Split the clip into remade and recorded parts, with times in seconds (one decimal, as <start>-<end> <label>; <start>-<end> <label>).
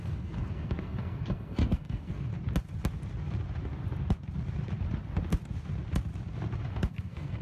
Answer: 0.0-2.3 remade; 2.3-6.7 recorded; 6.7-7.4 remade